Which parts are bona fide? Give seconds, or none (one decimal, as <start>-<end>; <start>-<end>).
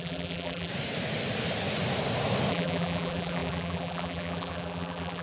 0.7-2.5